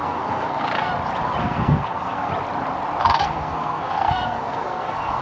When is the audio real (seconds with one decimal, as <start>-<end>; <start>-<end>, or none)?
0.9-1.4; 2.3-3.0